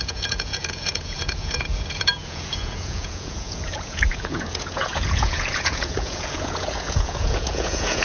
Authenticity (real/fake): fake